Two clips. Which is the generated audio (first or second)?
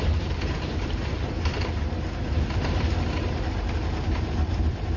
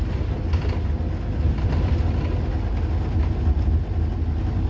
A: first